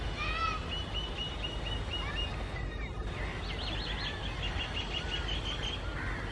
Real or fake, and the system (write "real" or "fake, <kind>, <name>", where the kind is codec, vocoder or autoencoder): real